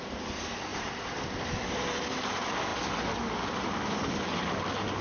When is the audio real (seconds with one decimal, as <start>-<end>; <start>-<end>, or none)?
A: 0.0-0.7; 1.7-5.0

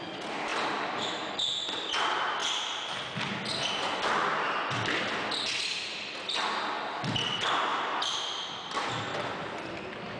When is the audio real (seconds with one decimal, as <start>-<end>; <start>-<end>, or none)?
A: 0.0-0.5; 1.9-2.4; 3.1-7.7; 8.9-10.2

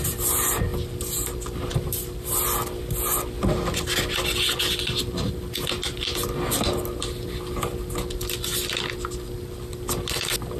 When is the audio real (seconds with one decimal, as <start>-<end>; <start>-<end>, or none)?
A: 0.0-10.6

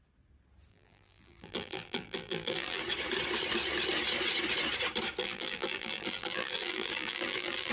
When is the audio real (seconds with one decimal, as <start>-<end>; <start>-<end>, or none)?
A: 0.0-0.7; 2.8-5.2

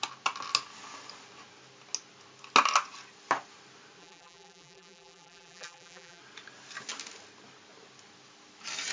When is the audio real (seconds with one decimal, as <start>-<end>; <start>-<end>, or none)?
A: 0.0-4.0; 6.2-8.9